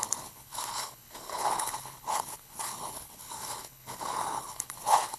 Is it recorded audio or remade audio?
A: remade